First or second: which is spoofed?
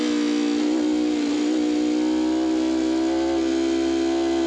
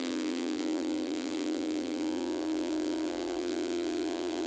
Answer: second